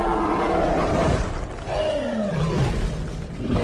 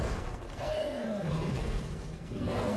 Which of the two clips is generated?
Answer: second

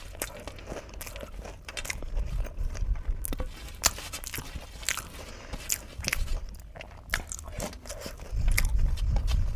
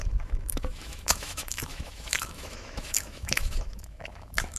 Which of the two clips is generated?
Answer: second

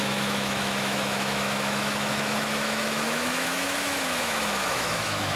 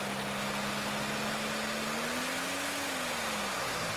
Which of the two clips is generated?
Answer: first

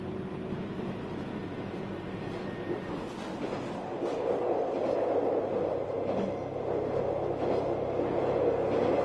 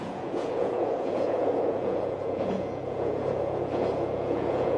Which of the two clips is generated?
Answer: second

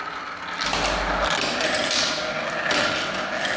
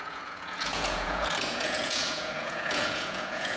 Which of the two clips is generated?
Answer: second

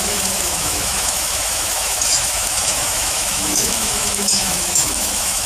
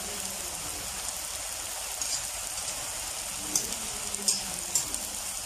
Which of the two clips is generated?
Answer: first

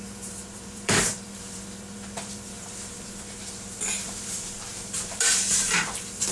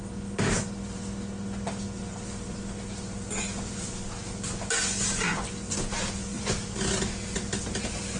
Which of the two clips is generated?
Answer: first